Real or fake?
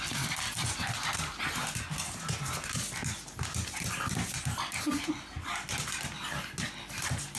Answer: real